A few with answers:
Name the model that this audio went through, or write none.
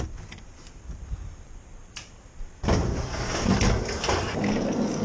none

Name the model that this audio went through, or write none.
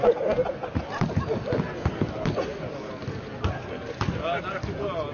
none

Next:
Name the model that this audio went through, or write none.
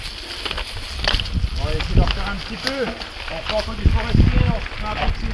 none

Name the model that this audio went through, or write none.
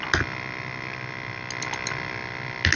none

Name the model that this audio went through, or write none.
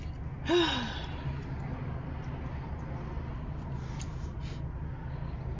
none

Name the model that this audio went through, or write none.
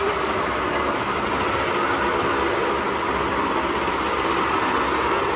none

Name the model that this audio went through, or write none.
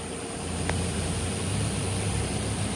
none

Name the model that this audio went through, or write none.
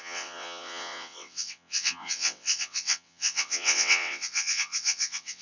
vocoder, WaveNeXt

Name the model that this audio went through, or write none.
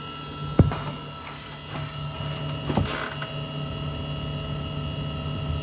none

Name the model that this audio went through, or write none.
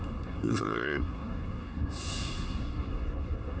codec, SNAC